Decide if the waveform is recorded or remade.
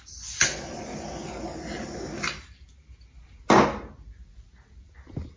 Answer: recorded